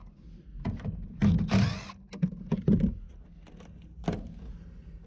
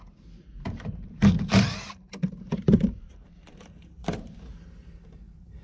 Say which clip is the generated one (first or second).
second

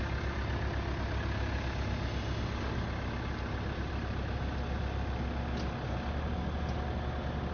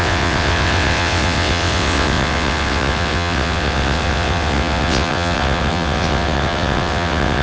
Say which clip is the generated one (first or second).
second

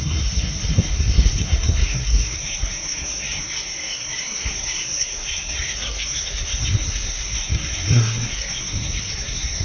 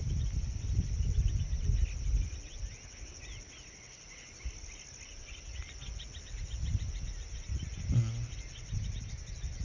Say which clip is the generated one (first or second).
first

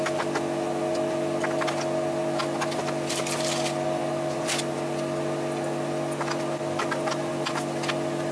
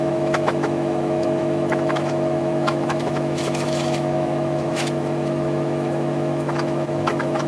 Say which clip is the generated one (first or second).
second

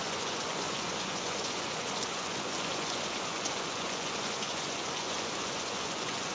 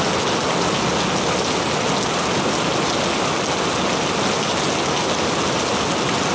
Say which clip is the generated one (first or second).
first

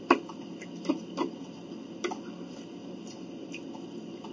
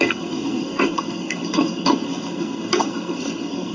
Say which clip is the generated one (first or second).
second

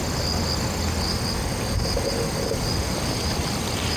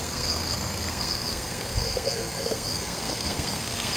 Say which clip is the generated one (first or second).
second